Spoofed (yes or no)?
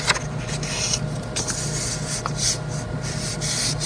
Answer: no